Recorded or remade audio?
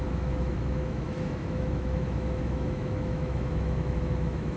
remade